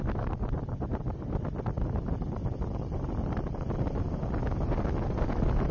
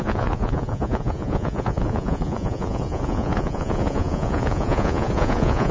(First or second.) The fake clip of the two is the second